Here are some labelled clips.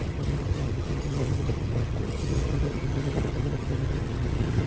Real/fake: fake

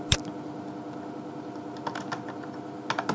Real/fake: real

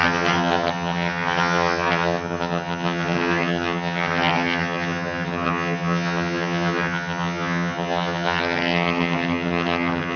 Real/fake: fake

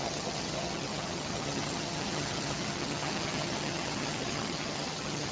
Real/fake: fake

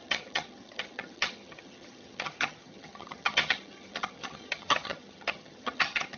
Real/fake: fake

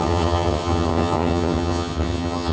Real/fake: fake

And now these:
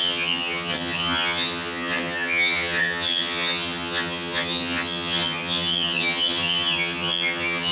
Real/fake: fake